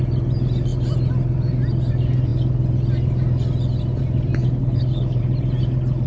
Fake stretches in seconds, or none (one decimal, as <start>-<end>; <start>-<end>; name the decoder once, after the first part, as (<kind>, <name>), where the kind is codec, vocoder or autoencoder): 4.6-5.2 (codec, HILCodec)